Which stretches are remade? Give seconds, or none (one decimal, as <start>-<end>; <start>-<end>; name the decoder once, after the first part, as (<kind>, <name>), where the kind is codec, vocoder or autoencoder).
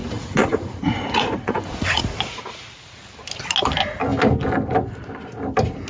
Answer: 0.0-2.0 (vocoder, Vocos)